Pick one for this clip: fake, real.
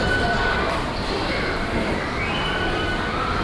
fake